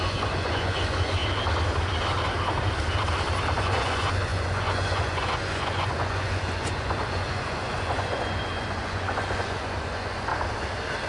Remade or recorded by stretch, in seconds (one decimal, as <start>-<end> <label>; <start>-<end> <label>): 0.0-1.2 remade; 1.2-3.6 recorded; 3.6-10.3 remade; 10.3-11.1 recorded